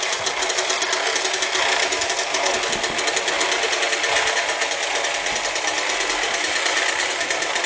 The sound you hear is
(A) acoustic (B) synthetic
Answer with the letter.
A